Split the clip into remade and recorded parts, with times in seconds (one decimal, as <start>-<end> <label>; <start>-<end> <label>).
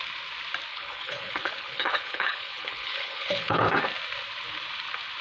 0.0-0.7 recorded; 0.7-3.8 remade; 3.8-5.2 recorded